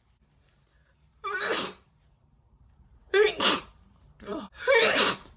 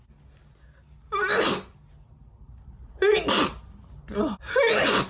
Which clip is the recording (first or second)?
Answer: second